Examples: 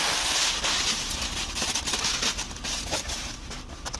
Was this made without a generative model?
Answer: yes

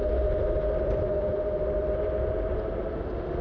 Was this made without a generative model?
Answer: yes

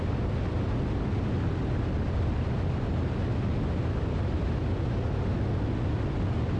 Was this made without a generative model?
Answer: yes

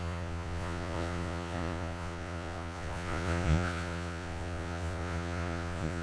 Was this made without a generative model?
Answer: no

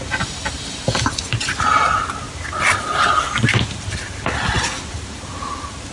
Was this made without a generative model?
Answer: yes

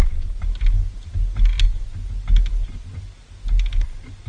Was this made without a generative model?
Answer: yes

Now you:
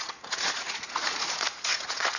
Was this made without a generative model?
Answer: no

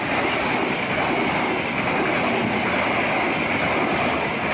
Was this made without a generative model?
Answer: yes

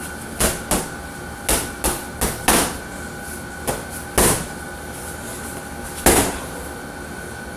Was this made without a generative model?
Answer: yes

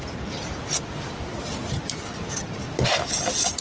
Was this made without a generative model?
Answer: yes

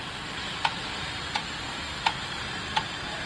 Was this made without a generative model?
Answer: yes